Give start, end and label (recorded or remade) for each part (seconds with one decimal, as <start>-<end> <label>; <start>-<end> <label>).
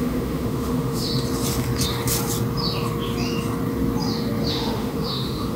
0.0-1.1 remade; 1.1-4.5 recorded; 4.5-5.6 remade